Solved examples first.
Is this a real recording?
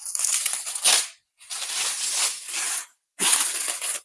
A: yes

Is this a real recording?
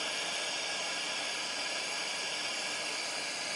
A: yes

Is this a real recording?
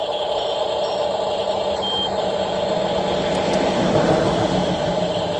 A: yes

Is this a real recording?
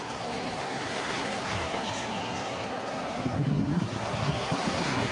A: no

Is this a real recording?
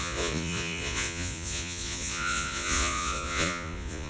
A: no